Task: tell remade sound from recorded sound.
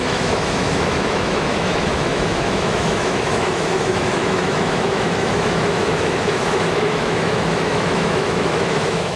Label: remade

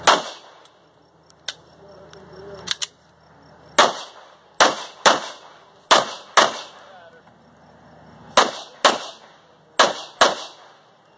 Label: recorded